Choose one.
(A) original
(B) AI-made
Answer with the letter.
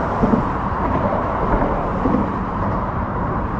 B